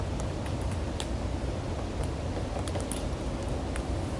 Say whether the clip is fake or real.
real